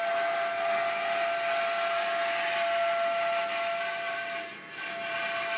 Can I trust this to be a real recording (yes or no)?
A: yes